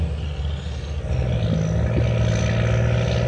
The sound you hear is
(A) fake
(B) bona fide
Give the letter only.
B